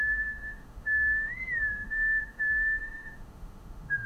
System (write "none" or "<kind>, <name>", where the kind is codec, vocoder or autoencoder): autoencoder, DAC-VAE